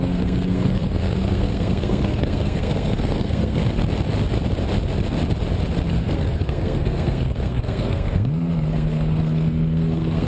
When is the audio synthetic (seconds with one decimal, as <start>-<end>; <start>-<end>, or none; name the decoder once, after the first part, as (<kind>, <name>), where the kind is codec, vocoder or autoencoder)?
0.0-3.8 (codec, SNAC); 5.9-10.3